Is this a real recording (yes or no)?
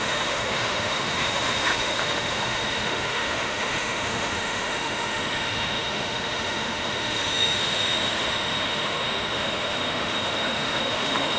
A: no